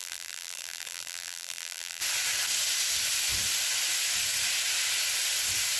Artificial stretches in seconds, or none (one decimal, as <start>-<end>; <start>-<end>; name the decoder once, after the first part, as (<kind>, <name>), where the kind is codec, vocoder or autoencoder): 0.0-2.0 (vocoder, BigVGAN v2)